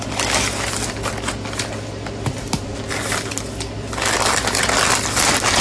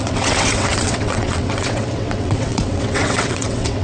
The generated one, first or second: second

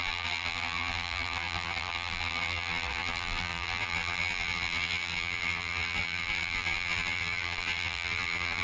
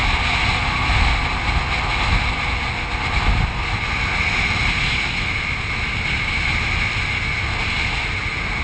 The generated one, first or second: first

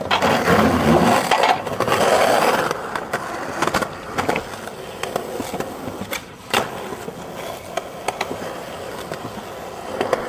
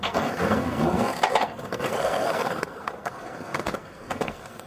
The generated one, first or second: second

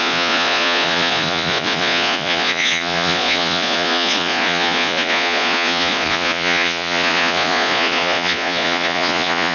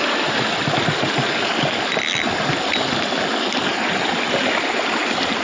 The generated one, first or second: first